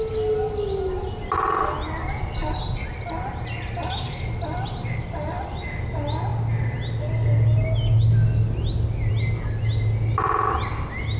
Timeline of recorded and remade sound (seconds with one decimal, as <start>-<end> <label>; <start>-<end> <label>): 0.0-11.2 recorded